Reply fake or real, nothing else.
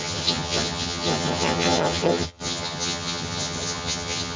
fake